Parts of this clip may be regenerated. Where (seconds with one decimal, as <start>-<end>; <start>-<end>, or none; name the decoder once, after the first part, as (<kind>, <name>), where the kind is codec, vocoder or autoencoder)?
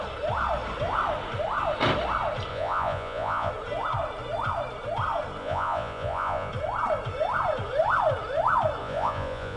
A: 2.5-3.5 (vocoder, Vocos); 5.4-6.5; 8.8-9.6